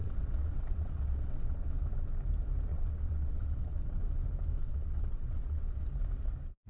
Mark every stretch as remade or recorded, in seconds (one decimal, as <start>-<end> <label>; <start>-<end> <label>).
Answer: 0.0-1.7 remade; 1.7-2.7 recorded; 2.7-4.0 remade; 4.0-4.6 recorded; 4.6-5.9 remade; 5.9-6.7 recorded